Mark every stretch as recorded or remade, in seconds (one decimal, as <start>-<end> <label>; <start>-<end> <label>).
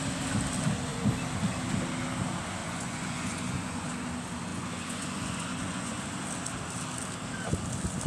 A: 0.0-2.6 recorded; 2.6-3.9 remade; 3.9-4.5 recorded; 4.5-6.0 remade; 6.0-8.1 recorded